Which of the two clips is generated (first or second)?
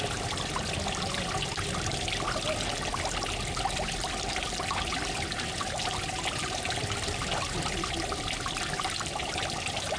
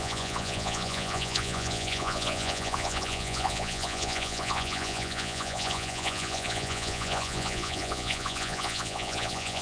second